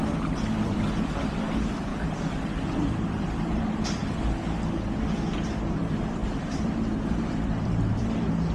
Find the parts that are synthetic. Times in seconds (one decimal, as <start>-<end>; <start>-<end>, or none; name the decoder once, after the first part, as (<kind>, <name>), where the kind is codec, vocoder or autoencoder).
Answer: 0.0-1.9 (vocoder, BigVGAN v2); 2.9-4.0; 5.7-8.5